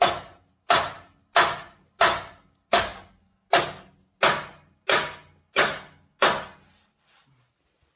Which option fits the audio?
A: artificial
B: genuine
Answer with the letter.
B